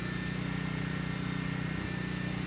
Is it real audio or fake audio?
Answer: real